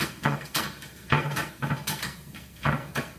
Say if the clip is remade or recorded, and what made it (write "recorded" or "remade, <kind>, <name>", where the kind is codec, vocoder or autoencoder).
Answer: remade, codec, SNAC